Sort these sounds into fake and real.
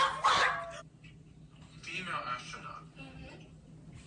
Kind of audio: real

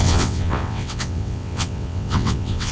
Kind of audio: fake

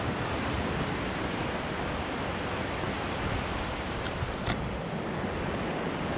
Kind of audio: real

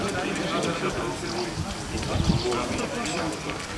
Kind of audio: real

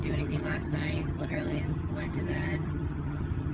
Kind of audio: fake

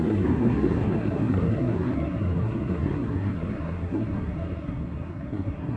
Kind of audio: fake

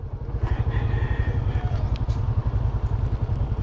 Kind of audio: real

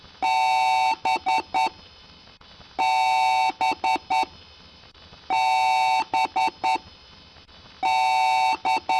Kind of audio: real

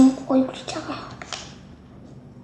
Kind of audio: real